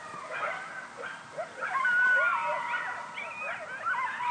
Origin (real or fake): real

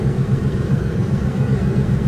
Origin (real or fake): fake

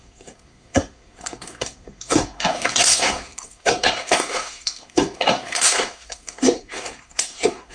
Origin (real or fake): fake